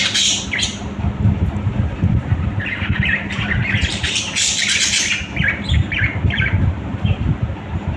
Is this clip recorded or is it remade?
remade